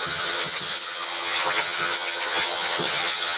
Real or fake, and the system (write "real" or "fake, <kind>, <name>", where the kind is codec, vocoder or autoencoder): fake, vocoder, HiFi-GAN